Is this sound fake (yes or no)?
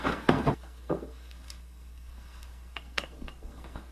yes